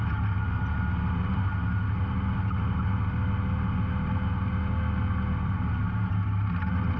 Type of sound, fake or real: real